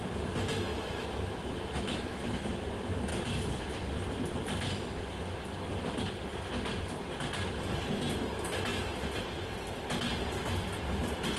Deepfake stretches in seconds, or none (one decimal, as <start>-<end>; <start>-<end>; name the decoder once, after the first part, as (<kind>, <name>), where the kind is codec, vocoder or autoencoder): 0.7-2.3 (autoencoder, DAC-VAE)